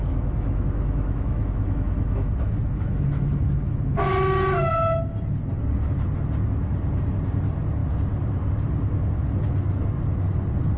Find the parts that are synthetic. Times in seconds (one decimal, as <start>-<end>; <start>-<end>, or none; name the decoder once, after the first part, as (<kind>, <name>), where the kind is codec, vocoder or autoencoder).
0.0-4.7 (autoencoder, DAC-VAE)